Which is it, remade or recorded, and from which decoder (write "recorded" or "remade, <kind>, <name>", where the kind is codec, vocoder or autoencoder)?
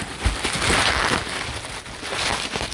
recorded